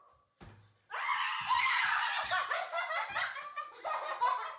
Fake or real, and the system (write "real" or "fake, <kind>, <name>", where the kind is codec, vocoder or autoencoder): real